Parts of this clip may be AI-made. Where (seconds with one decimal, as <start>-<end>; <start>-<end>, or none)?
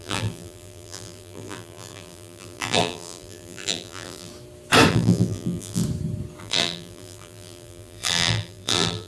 0.0-4.3; 4.9-5.8; 6.4-9.1